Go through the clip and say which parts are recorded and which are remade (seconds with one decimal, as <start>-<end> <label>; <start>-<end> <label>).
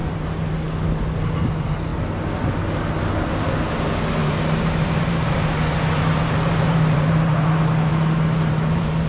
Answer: 0.0-0.5 remade; 0.5-4.2 recorded; 4.2-7.5 remade; 7.5-7.9 recorded; 7.9-9.1 remade